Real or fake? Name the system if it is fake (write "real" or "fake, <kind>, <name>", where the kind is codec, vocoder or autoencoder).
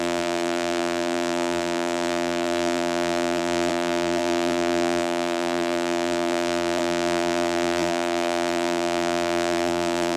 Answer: fake, vocoder, BigVGAN v2